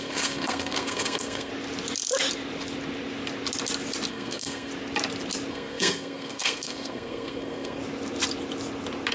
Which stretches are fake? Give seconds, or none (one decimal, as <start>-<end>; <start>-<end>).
0.0-1.5; 4.1-4.7; 5.5-7.8